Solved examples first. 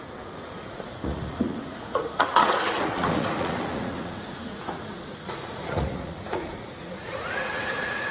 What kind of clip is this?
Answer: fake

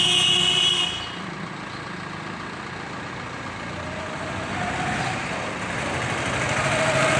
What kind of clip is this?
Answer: real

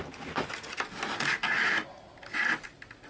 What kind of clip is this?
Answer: real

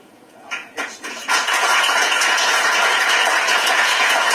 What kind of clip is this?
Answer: fake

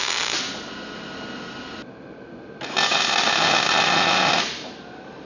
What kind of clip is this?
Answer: real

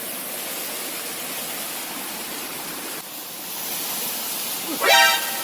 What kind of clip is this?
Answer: real